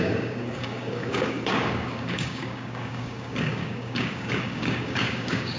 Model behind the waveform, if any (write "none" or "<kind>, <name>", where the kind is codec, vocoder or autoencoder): codec, DAC